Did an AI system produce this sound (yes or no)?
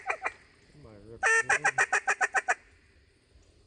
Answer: no